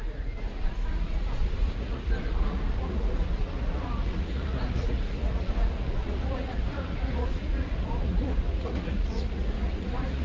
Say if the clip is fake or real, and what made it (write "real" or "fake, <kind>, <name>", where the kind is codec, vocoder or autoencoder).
fake, vocoder, Vocos